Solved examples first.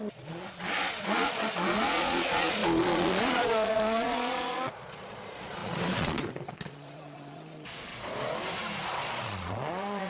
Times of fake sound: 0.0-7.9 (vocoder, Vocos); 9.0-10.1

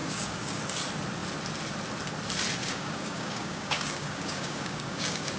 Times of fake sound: 0.0-0.6 (codec, DAC); 2.6-5.4

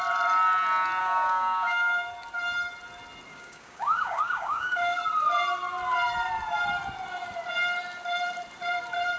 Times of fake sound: 1.0-2.1 (codec, DAC); 3.3-5.0

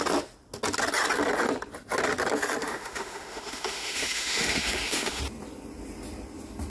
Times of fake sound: 2.6-5.2 (autoencoder, DAC-VAE)

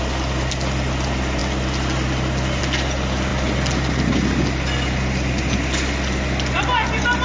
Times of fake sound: none

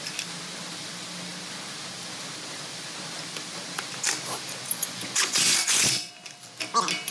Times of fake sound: 4.8-6.1 (vocoder, Vocos)

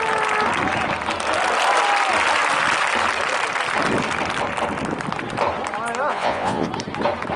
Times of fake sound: 6.1-6.7 (vocoder, Vocos)